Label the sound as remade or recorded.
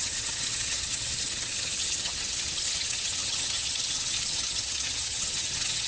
remade